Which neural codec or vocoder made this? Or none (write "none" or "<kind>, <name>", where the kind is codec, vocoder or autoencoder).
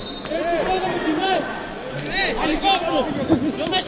none